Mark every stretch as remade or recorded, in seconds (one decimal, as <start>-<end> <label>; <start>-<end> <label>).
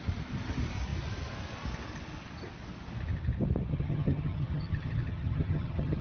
0.0-3.7 recorded; 3.7-6.0 remade